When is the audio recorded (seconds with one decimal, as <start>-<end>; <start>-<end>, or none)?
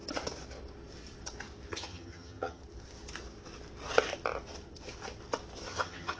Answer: 0.0-1.7; 2.6-5.7